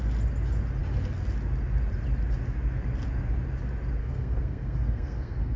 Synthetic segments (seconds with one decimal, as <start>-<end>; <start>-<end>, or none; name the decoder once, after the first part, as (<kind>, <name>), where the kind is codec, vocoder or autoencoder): 4.0-5.6 (codec, SNAC)